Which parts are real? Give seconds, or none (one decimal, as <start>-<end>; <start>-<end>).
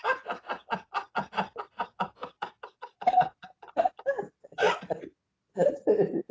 0.0-1.2; 5.0-6.3